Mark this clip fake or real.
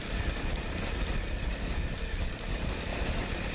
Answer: real